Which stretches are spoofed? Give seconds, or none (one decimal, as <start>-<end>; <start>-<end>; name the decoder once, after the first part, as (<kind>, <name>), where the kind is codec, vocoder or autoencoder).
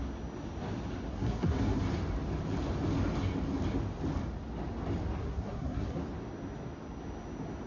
1.1-1.8 (codec, SNAC); 5.2-6.0